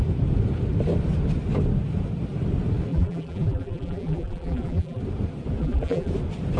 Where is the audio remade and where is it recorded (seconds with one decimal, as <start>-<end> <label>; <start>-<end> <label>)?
0.0-2.9 recorded; 2.9-5.0 remade; 5.0-5.6 recorded; 5.6-6.1 remade; 6.1-6.6 recorded